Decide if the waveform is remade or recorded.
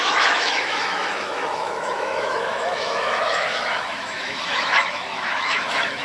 remade